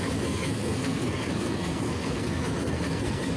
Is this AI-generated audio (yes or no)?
yes